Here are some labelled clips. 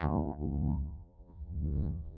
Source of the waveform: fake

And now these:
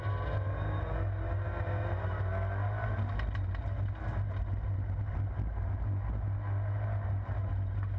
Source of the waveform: real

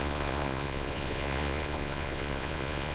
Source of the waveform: fake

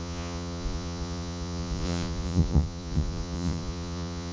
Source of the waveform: fake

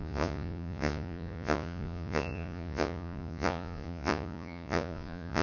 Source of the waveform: fake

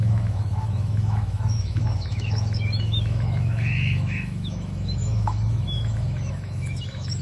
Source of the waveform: fake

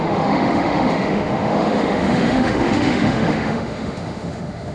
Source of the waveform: fake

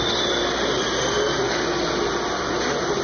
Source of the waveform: real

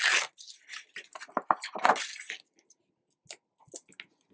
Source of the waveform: real